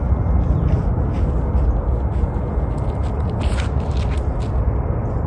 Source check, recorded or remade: recorded